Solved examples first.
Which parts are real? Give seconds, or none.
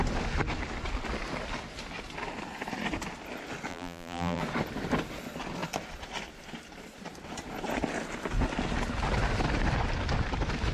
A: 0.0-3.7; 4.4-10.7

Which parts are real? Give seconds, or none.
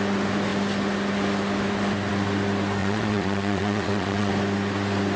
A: 0.0-2.8; 4.3-5.2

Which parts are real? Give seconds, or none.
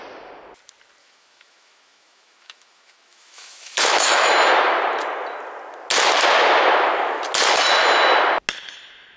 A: 0.0-1.0; 4.3-9.2